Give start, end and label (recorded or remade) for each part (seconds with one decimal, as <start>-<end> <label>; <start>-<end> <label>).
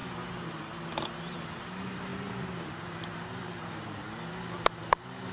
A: 0.0-1.4 remade; 1.4-2.1 recorded; 2.1-5.3 remade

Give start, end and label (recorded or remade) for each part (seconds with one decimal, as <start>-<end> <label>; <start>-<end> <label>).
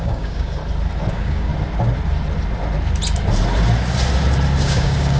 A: 0.0-0.6 remade; 0.6-1.1 recorded; 1.1-1.5 remade; 1.5-4.6 recorded; 4.6-5.2 remade